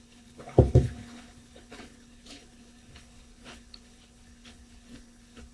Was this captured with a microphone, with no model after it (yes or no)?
no